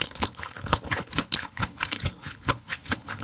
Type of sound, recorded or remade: remade